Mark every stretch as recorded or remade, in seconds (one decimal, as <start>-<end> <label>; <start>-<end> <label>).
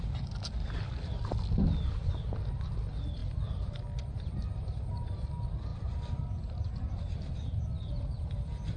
0.0-8.8 recorded